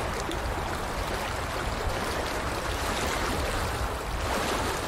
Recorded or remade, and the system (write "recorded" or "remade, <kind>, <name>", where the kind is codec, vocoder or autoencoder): recorded